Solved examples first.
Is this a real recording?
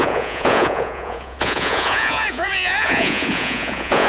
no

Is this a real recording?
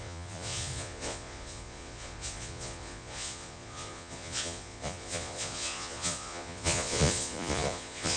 no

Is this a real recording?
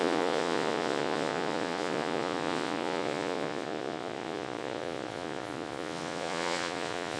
no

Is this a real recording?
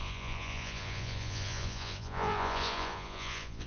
no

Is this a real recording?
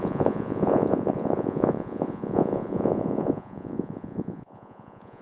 no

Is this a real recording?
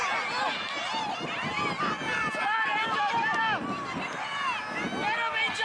yes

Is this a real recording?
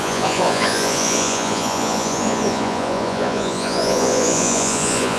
no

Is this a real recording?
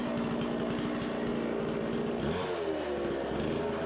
yes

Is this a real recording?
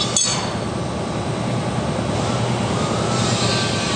yes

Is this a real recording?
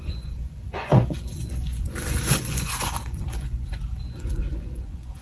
no